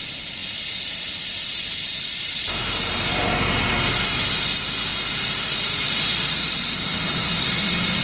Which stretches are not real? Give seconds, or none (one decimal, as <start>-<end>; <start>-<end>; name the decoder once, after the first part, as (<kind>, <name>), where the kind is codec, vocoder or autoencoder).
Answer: none

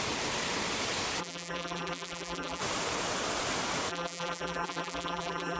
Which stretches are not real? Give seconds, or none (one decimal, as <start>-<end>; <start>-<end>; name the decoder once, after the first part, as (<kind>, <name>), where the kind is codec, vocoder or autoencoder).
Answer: 1.2-2.6 (vocoder, BigVGAN v2); 3.9-5.6

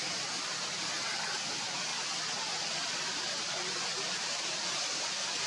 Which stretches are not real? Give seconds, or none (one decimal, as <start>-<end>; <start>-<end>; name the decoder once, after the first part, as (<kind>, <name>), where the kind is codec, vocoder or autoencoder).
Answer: none

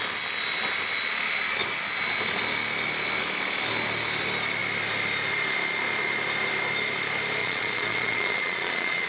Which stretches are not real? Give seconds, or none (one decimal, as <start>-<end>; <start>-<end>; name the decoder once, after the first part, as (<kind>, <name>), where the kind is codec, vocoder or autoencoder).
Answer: 7.4-9.1 (vocoder, Vocos)

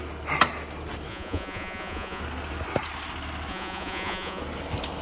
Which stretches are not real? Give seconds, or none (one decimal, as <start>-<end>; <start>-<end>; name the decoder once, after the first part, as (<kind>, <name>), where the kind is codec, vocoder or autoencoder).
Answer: 1.1-2.2 (vocoder, Vocos); 3.5-4.4

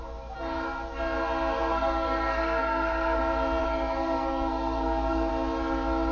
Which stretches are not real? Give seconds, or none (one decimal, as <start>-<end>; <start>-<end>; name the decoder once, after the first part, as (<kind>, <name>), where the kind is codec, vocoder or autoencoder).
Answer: 1.5-3.2 (codec, SNAC); 3.6-5.3

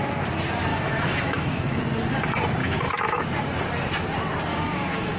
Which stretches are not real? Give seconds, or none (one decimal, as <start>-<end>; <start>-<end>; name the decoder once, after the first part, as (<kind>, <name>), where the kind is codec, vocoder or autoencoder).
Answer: 0.7-1.8 (autoencoder, DAC-VAE); 2.6-3.2; 4.5-5.2